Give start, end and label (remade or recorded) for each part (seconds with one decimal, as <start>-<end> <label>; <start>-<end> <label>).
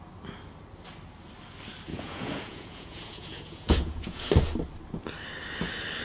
0.0-1.9 recorded; 1.9-4.3 remade; 4.3-6.0 recorded